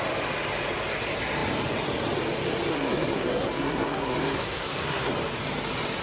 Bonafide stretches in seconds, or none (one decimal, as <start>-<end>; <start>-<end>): 0.0-2.7; 5.1-6.0